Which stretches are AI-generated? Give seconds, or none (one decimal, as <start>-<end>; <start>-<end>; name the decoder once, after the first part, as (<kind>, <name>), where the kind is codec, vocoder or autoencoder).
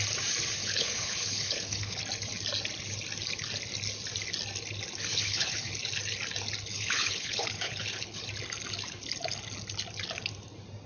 0.6-2.0 (codec, HILCodec); 5.1-5.7; 6.7-8.3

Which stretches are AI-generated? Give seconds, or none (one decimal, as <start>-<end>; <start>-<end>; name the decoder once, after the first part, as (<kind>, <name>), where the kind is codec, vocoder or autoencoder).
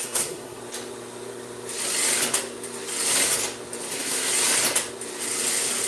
0.0-0.6 (codec, SNAC); 3.9-4.3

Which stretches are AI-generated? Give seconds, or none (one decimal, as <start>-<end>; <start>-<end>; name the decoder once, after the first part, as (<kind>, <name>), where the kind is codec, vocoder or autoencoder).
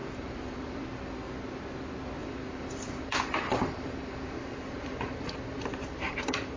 0.0-0.8 (vocoder, BigVGAN v2); 2.2-6.6